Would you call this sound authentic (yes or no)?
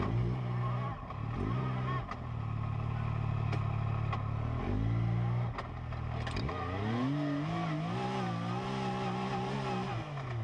yes